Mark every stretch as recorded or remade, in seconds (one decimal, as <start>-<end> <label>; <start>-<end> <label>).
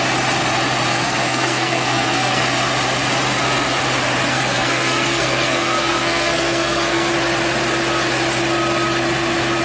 0.0-0.9 recorded; 0.9-2.4 remade; 2.4-4.3 recorded; 4.3-7.1 remade; 7.1-9.6 recorded